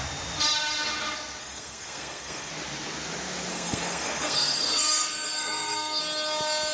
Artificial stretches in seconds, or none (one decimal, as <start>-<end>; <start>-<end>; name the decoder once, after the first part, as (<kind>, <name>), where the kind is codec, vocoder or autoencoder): 1.4-2.5 (codec, SNAC); 3.5-6.0